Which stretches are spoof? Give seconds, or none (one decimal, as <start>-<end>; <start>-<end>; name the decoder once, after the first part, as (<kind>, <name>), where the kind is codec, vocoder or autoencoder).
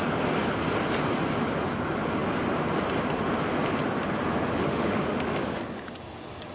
4.6-5.6 (autoencoder, DAC-VAE)